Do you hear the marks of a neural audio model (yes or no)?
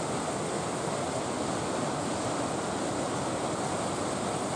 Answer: no